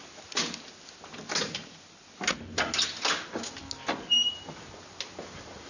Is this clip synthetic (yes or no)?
no